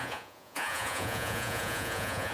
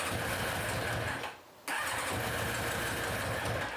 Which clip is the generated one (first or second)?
first